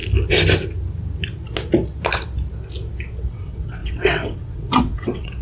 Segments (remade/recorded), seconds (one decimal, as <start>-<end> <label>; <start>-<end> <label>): 0.0-3.2 recorded; 3.2-5.4 remade